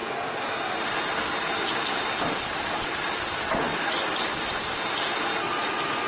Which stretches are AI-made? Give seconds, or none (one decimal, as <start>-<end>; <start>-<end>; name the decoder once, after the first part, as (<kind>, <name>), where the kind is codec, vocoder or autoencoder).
none